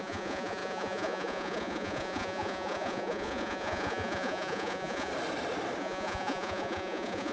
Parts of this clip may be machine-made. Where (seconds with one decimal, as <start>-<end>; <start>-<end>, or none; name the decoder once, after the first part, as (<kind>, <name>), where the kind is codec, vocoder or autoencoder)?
0.0-5.1 (vocoder, Vocos); 5.8-7.3